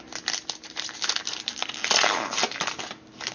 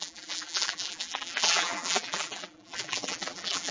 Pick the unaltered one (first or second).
first